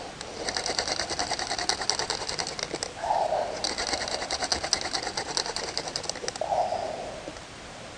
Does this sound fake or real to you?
real